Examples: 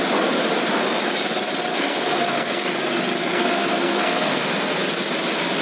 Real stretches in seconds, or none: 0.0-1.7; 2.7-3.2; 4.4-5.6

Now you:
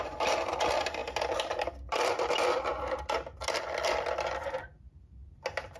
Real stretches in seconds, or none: 0.0-5.8